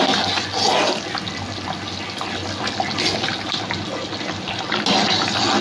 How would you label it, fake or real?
real